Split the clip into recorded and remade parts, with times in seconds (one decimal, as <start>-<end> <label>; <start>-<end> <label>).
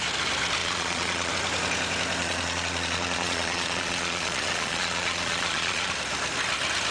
0.0-0.6 recorded; 0.6-1.3 remade; 1.3-2.2 recorded; 2.2-5.9 remade; 5.9-6.9 recorded